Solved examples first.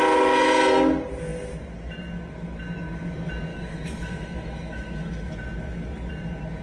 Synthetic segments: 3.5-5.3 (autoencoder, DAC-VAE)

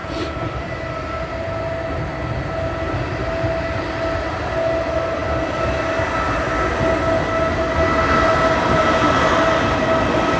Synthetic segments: 0.0-1.6 (vocoder, BigVGAN v2)

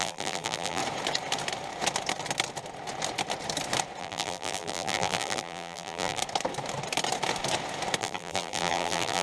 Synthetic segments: 0.0-0.8 (vocoder, BigVGAN v2); 4.0-6.2; 8.0-9.2